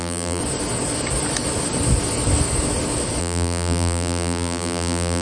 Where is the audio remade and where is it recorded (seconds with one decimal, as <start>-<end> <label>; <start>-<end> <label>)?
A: 0.0-0.4 remade; 0.4-3.2 recorded; 3.2-5.2 remade